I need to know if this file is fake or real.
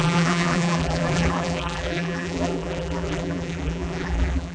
fake